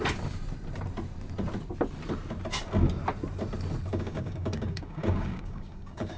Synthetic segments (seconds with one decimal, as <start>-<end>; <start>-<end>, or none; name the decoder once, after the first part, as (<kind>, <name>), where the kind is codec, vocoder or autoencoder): 3.9-6.2 (codec, DAC)